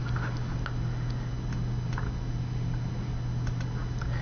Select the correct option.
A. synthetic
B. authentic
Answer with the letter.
B